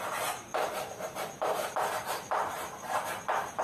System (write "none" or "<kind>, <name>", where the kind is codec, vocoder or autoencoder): vocoder, BigVGAN v2